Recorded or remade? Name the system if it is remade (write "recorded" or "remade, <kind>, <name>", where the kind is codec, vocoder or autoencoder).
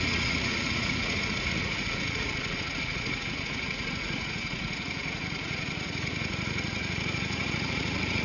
remade, vocoder, Vocos